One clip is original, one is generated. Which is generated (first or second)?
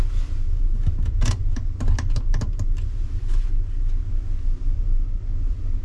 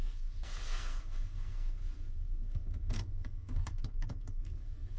second